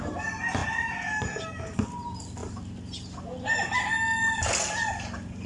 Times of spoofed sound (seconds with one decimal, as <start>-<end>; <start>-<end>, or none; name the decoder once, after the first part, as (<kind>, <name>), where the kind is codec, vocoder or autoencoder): none